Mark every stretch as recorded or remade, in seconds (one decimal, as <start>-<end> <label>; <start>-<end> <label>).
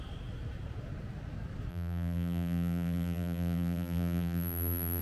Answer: 0.0-1.7 recorded; 1.7-5.0 remade